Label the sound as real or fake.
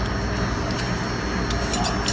real